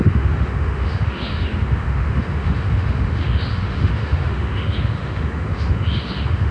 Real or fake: fake